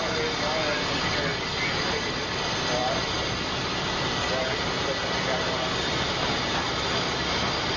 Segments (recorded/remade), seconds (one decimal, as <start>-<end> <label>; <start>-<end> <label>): 0.0-7.8 recorded